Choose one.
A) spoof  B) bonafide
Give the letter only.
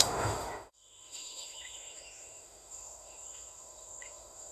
A